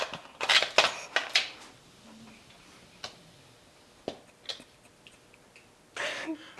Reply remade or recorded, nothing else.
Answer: recorded